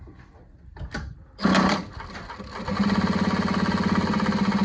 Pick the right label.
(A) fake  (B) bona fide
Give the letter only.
B